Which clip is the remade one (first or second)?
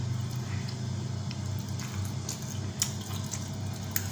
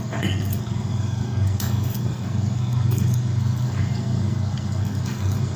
second